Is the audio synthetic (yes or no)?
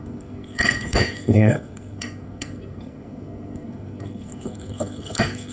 yes